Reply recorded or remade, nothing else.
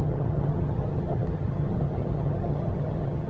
remade